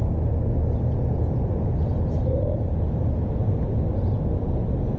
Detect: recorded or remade recorded